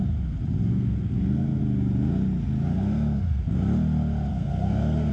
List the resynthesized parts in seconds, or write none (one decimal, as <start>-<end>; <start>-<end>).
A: 0.7-1.6; 2.7-3.4; 4.3-5.1